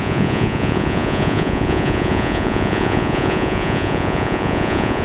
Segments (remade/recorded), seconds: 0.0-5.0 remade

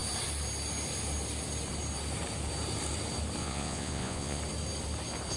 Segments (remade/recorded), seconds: 0.0-3.4 recorded; 3.4-4.4 remade; 4.4-5.4 recorded

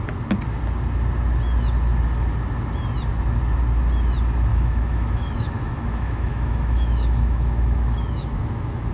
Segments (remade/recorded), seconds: 0.0-4.5 recorded; 4.5-8.9 remade

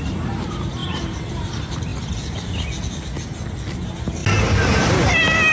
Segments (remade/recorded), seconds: 0.0-1.9 remade; 1.9-3.7 recorded; 3.7-4.2 remade; 4.2-4.8 recorded; 4.8-5.5 remade